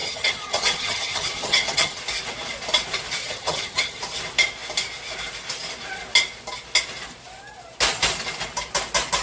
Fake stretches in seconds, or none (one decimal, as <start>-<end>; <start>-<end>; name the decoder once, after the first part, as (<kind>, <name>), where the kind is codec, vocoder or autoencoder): 0.0-2.0 (vocoder, HiFi-GAN); 3.2-4.0